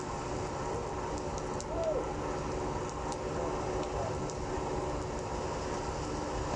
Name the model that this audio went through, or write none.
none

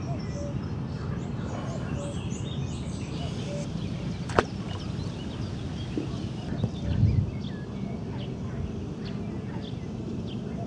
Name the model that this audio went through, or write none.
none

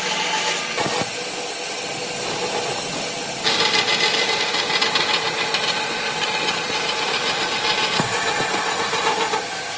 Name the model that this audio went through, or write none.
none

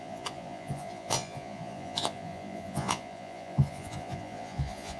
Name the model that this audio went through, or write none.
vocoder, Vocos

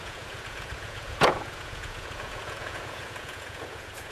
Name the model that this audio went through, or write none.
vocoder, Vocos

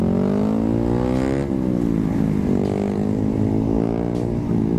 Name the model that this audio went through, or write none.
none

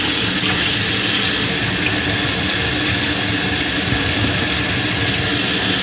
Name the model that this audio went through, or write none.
none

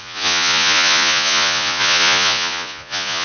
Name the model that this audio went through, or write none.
vocoder, Vocos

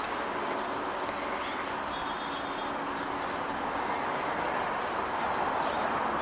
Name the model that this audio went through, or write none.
none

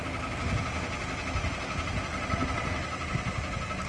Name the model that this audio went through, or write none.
none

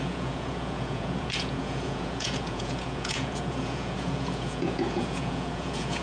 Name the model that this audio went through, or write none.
vocoder, Vocos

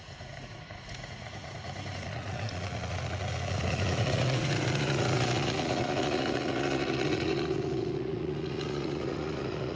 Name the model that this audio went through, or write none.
vocoder, Vocos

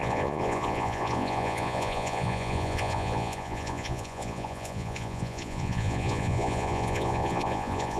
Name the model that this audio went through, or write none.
vocoder, Vocos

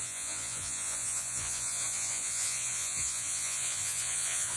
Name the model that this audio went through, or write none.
vocoder, Vocos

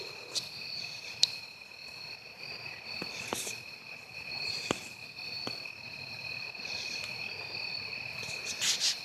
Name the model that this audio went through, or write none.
none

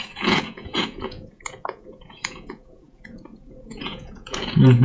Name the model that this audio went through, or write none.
vocoder, Vocos